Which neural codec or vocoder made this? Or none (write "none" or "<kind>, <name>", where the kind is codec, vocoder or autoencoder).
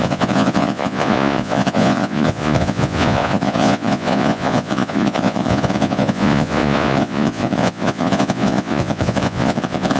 vocoder, Vocos